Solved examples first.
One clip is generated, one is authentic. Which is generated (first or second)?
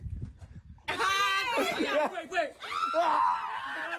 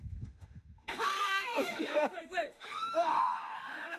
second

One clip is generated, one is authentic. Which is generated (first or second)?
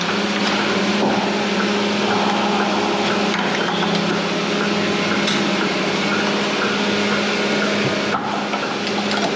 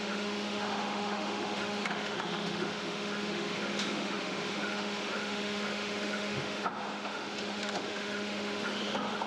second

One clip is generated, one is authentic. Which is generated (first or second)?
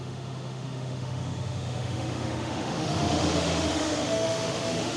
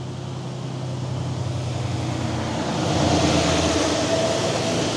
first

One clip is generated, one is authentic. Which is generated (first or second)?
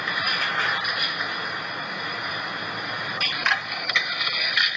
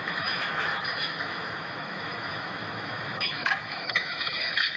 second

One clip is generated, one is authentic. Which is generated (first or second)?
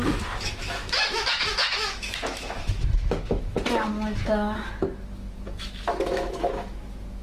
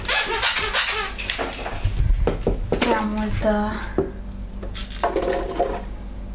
first